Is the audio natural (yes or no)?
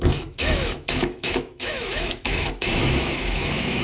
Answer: no